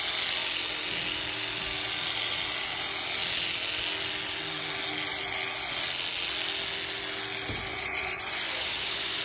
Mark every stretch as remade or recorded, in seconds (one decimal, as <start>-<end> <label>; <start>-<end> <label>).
0.0-7.7 recorded; 7.7-9.2 remade